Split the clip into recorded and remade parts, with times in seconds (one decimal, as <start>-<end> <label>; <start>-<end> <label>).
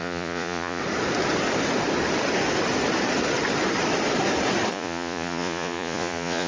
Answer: 0.0-0.8 remade; 0.8-4.7 recorded; 4.7-6.5 remade